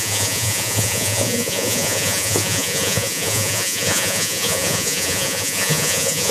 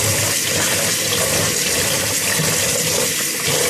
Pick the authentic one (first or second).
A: second